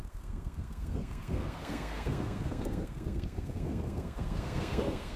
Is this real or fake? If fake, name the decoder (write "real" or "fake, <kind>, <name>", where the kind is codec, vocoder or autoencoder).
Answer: fake, codec, SNAC